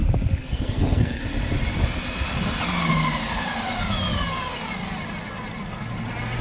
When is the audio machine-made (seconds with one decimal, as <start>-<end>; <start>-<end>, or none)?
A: 0.4-1.2